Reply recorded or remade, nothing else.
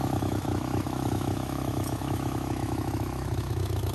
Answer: remade